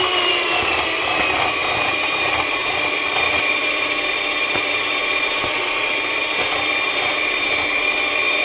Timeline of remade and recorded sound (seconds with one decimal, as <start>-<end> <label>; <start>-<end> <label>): 0.0-8.4 remade